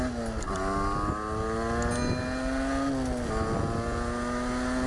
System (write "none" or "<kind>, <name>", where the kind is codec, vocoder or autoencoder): none